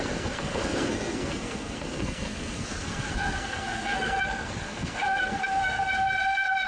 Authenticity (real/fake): fake